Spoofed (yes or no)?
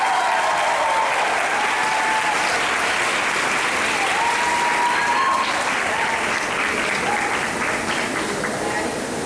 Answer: no